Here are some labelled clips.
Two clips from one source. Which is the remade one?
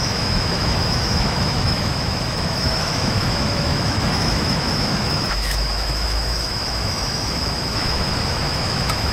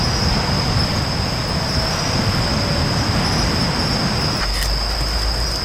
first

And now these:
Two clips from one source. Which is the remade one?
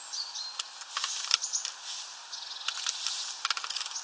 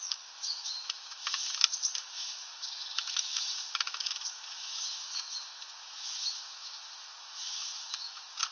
second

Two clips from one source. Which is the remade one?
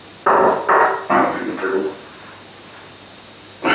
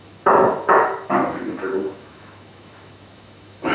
second